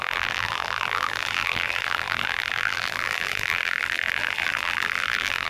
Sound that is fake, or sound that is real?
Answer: fake